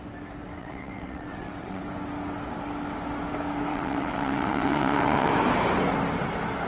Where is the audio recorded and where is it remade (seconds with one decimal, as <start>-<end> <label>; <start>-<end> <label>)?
0.0-0.6 recorded; 0.6-1.8 remade; 1.8-3.7 recorded; 3.7-5.3 remade; 5.3-6.7 recorded